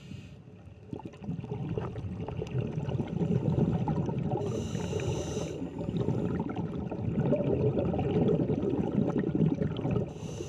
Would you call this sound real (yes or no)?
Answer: yes